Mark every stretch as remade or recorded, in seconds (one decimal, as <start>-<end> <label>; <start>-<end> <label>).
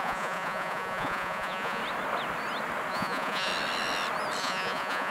0.0-1.8 remade; 1.8-2.9 recorded; 2.9-3.5 remade; 3.5-4.4 recorded; 4.4-5.1 remade